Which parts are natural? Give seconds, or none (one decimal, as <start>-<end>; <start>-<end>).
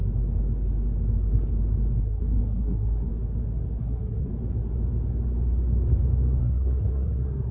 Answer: 0.0-2.0; 3.1-3.8; 4.3-6.4